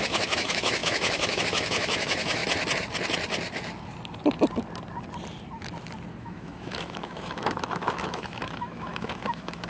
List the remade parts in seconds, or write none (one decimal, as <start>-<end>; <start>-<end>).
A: 0.0-2.4; 6.2-9.7